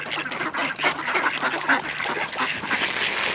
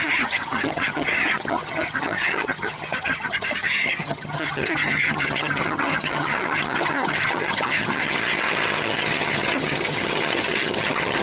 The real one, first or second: first